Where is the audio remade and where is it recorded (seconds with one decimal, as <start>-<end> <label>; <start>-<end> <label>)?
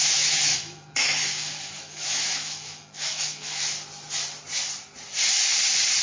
0.0-3.6 remade; 3.6-6.0 recorded